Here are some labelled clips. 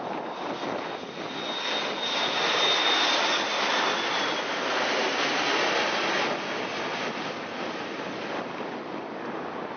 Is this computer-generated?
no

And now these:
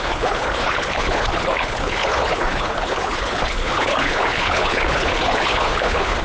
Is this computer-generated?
yes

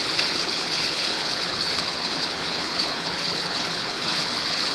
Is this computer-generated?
yes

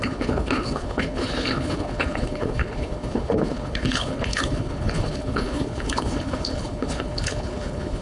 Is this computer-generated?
yes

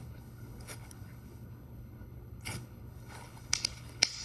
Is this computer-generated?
yes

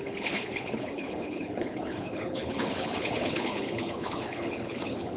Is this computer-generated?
yes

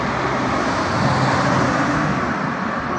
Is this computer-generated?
no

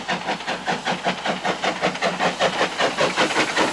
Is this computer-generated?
no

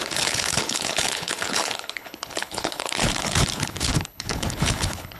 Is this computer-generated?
yes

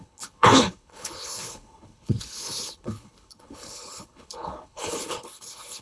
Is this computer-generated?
yes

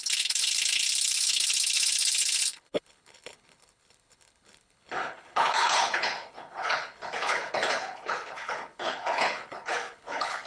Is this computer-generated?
yes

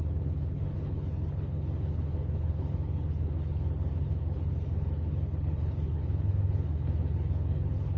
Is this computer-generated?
yes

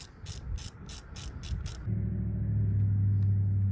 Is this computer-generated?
no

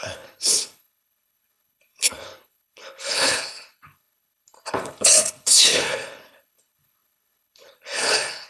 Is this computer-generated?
yes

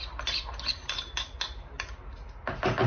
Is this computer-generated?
no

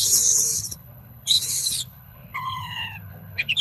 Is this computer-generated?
yes